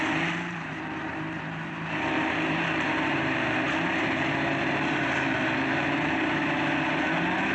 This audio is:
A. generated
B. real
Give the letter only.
A